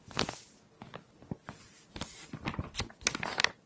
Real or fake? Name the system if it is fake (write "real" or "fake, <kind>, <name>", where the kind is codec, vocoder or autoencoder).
real